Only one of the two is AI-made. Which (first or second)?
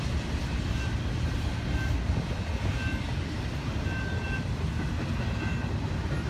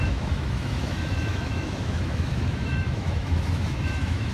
second